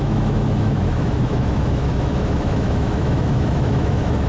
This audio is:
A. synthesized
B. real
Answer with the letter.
A